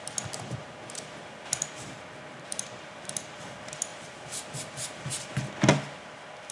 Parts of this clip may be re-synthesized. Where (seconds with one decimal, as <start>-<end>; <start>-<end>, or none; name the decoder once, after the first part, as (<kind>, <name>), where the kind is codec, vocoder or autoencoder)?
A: 0.6-3.4 (vocoder, BigVGAN v2); 3.9-5.3